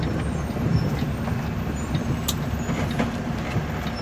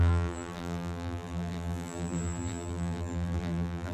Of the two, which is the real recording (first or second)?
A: first